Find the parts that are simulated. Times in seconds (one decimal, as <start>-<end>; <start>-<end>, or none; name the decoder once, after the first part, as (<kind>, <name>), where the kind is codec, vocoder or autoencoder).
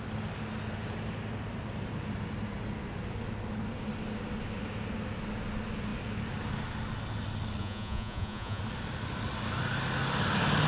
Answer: 7.6-8.6 (vocoder, Vocos)